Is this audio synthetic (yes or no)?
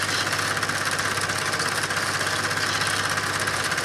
no